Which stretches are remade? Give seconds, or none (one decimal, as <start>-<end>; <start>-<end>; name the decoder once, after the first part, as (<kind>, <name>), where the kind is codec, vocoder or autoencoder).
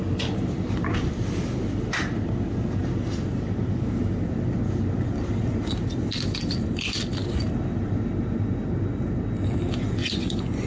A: 10.0-10.7 (vocoder, Vocos)